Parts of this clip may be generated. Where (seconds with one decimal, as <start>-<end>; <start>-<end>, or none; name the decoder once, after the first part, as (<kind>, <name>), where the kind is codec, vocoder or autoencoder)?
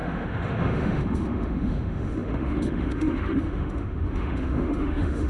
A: 0.0-5.3 (autoencoder, DAC-VAE)